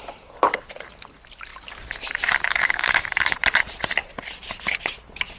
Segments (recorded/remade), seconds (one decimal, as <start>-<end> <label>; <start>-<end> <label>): 0.0-2.5 recorded; 2.5-3.3 remade; 3.3-5.4 recorded